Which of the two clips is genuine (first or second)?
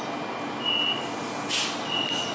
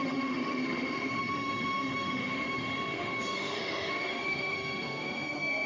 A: first